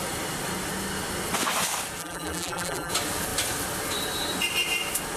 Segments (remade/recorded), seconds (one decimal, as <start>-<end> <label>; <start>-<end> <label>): 0.0-2.0 recorded; 2.0-2.9 remade; 2.9-5.2 recorded